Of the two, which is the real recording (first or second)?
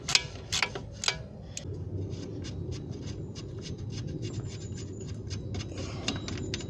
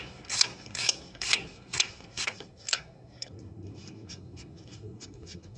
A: first